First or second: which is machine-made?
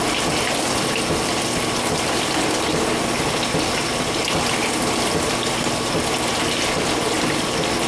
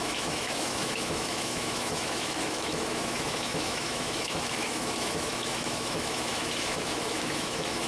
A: second